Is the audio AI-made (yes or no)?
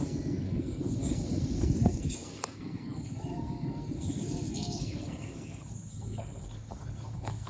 yes